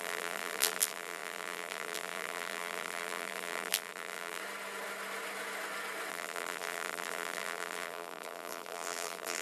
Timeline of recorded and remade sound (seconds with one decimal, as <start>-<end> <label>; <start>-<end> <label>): 0.0-4.4 remade; 4.4-6.1 recorded; 6.1-9.4 remade